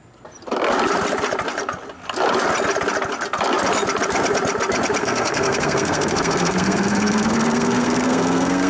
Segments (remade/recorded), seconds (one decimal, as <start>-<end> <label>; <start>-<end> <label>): 0.0-5.0 recorded; 5.0-8.7 remade